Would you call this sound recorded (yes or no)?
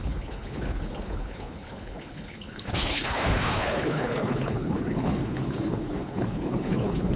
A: no